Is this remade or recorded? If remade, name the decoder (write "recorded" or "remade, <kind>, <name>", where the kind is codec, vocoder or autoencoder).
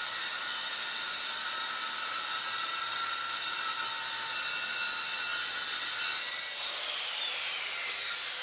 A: remade, vocoder, BigVGAN v2